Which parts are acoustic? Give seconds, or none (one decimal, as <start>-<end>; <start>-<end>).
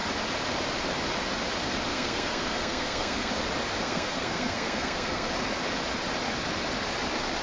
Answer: 0.0-1.9; 3.3-3.8; 5.3-7.4